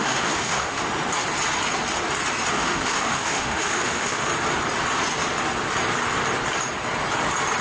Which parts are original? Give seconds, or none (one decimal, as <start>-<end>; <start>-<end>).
0.8-2.5; 4.3-7.6